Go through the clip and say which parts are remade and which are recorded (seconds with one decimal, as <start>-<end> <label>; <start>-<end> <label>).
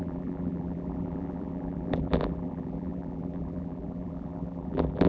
0.0-5.1 remade